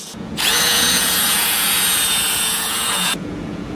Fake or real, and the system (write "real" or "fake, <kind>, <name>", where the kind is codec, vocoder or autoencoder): fake, vocoder, Vocos